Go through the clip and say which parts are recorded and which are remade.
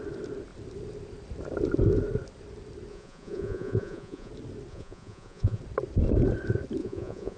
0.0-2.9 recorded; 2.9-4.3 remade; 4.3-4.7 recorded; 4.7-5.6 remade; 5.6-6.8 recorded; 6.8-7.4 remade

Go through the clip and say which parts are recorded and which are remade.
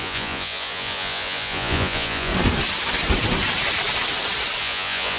0.0-2.3 remade; 2.3-4.6 recorded; 4.6-5.2 remade